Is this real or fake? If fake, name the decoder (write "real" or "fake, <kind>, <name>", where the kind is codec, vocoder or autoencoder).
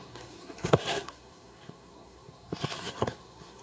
fake, codec, SNAC